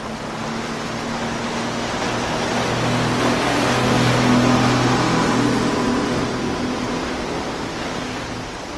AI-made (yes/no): no